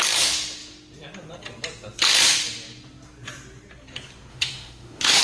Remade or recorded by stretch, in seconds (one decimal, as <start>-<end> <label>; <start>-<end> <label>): 0.0-4.3 recorded; 4.3-5.2 remade